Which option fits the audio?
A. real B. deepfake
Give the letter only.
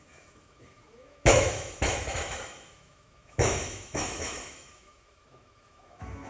B